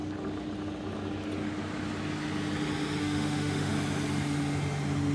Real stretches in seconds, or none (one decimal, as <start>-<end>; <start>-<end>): 0.0-3.0; 3.7-5.1